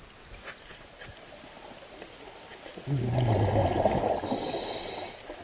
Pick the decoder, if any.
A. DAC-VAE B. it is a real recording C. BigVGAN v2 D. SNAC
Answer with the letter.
B